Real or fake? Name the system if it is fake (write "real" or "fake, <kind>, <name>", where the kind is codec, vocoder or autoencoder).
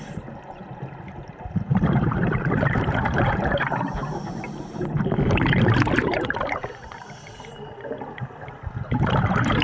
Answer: fake, vocoder, BigVGAN v2